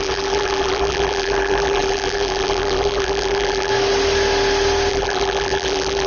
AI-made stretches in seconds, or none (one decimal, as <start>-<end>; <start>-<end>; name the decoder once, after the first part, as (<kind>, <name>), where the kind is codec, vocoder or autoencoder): 0.0-3.7 (vocoder, BigVGAN v2); 4.9-6.1